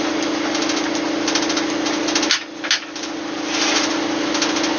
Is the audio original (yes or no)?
yes